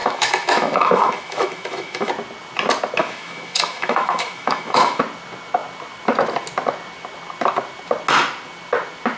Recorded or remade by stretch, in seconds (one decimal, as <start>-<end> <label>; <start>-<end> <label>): 0.0-2.1 remade; 2.1-3.0 recorded; 3.0-5.0 remade; 5.0-9.2 recorded